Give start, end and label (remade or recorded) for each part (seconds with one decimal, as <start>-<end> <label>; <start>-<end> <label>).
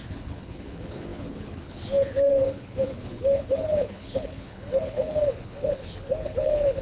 0.0-6.8 remade